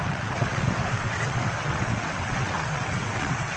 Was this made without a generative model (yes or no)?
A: no